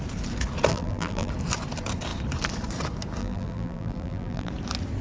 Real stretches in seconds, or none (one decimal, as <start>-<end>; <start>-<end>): 0.0-0.7; 1.3-3.2; 4.5-5.0